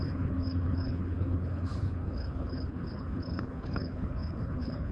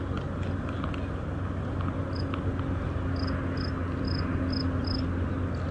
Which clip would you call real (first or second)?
second